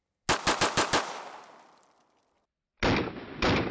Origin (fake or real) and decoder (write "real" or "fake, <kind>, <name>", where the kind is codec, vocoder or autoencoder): real